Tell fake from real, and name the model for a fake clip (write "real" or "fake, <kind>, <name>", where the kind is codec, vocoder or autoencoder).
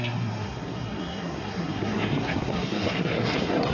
fake, codec, SNAC